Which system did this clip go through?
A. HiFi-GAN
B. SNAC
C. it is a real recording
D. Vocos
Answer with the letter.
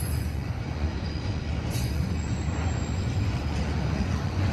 D